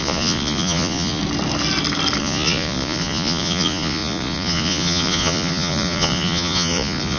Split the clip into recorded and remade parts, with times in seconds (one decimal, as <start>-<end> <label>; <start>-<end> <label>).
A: 0.0-1.2 remade; 1.2-2.2 recorded; 2.2-7.2 remade